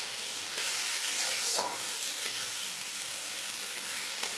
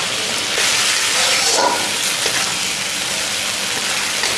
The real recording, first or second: second